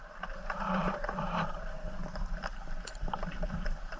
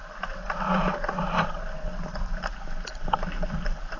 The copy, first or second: first